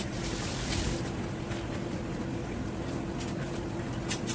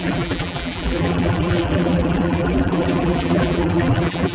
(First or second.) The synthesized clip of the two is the second